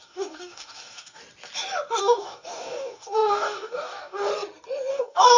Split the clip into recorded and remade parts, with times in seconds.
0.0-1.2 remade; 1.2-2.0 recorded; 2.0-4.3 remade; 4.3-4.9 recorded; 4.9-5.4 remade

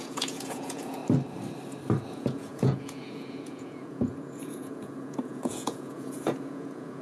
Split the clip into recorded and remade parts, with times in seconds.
0.0-1.0 remade; 1.0-2.1 recorded; 2.1-7.0 remade

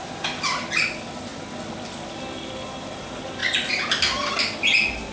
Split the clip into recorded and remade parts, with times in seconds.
0.0-5.1 recorded

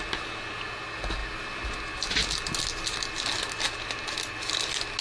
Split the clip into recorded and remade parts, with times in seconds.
0.0-5.0 recorded